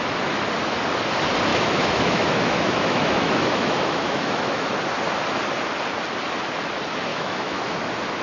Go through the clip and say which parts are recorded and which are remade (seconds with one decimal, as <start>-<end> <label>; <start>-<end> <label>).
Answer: 0.0-1.5 recorded; 1.5-4.7 remade; 4.7-7.1 recorded; 7.1-7.6 remade; 7.6-8.2 recorded